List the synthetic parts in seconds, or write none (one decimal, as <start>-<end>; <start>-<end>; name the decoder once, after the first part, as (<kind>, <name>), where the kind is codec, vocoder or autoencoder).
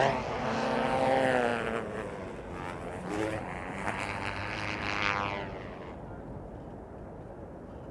none